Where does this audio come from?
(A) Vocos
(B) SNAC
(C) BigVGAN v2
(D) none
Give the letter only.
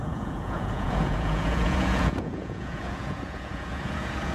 A